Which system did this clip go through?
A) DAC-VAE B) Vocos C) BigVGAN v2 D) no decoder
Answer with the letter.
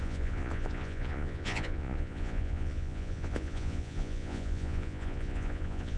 B